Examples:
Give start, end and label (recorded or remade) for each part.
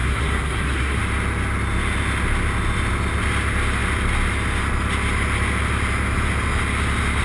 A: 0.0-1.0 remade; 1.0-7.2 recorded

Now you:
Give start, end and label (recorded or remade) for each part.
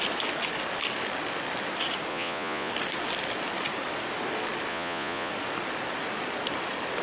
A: 0.0-2.1 recorded; 2.1-2.7 remade; 2.7-4.7 recorded; 4.7-5.3 remade; 5.3-7.0 recorded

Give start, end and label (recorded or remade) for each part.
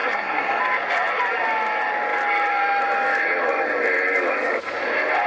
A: 0.0-0.6 remade; 0.6-5.3 recorded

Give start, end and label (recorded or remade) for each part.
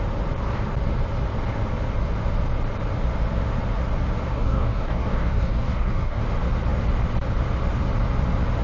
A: 0.0-4.3 recorded; 4.3-6.2 remade; 6.2-8.6 recorded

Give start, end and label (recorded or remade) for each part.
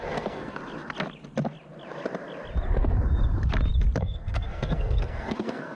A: 0.0-0.6 remade; 0.6-4.0 recorded; 4.0-5.7 remade